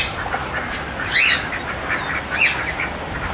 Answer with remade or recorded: recorded